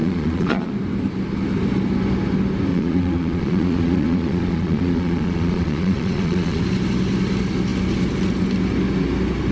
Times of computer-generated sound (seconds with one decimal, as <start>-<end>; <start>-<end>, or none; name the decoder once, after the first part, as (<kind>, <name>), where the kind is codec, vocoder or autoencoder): 0.0-0.7 (vocoder, Vocos); 2.7-6.6